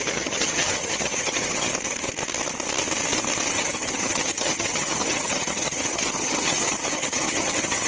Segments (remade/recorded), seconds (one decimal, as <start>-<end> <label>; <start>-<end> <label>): 0.0-1.7 remade; 1.7-3.5 recorded; 3.5-7.9 remade